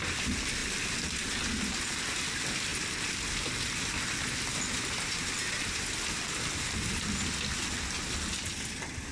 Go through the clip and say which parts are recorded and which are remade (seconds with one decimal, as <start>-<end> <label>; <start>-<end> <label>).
0.0-9.1 recorded